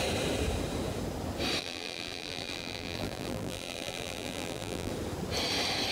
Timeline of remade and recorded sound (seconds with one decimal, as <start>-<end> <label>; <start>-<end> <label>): 0.0-1.6 recorded; 1.6-4.9 remade; 4.9-5.9 recorded